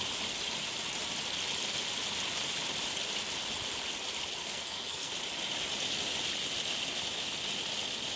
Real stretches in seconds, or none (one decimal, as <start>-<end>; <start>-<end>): 0.0-4.4; 5.1-8.2